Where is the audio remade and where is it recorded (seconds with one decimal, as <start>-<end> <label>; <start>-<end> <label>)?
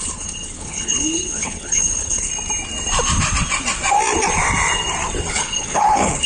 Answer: 0.0-2.3 remade; 2.3-5.3 recorded; 5.3-6.3 remade